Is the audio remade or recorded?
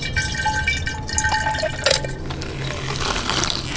recorded